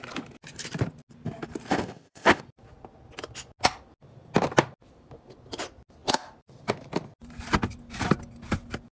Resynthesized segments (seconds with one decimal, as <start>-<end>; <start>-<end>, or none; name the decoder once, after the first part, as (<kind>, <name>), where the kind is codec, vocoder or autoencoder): 1.7-2.4 (codec, ZipCodec)